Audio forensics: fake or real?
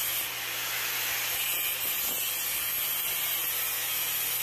real